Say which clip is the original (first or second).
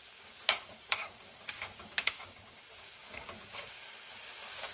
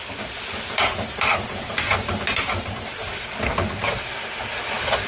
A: second